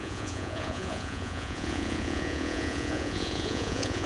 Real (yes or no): no